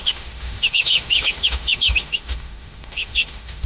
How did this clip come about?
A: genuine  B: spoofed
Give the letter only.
B